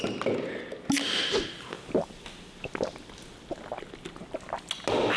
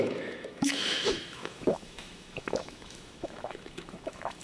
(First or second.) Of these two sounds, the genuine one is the first